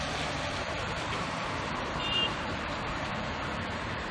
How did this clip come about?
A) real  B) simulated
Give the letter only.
B